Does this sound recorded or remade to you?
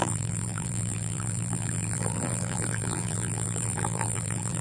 remade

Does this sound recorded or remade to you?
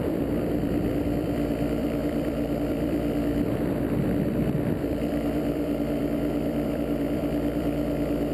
remade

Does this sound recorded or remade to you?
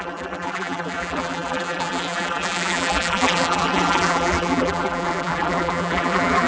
remade